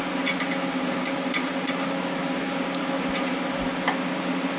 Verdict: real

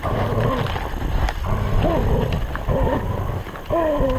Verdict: real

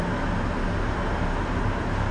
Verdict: real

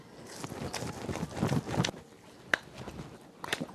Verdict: real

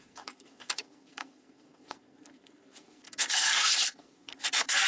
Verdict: fake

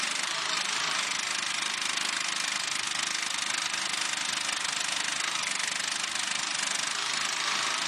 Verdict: real